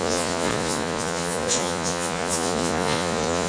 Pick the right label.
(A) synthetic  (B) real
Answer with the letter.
A